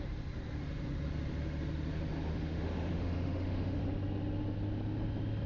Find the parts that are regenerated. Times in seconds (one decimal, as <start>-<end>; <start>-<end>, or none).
2.3-3.8